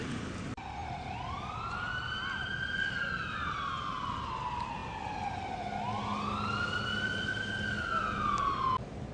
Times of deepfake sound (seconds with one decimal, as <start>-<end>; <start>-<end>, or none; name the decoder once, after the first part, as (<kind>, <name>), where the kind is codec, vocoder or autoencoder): none